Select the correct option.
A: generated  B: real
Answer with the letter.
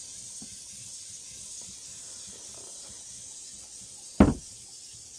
B